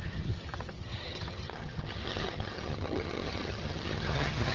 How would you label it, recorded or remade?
remade